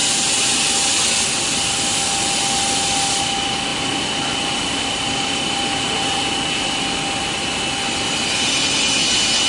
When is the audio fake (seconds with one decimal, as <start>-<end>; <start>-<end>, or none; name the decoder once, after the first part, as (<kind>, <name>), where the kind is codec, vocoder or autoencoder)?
3.7-6.3 (vocoder, BigVGAN v2)